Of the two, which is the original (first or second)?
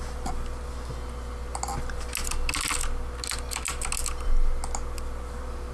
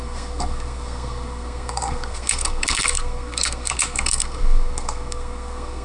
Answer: first